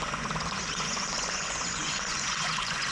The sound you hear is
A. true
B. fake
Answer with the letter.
B